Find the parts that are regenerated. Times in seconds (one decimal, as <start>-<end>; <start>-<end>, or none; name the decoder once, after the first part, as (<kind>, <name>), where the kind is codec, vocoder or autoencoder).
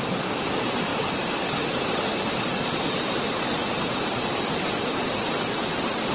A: none